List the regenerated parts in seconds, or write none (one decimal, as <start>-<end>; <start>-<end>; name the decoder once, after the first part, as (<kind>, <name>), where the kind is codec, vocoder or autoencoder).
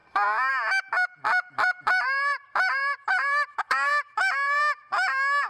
0.0-0.5 (vocoder, BigVGAN v2); 1.3-4.6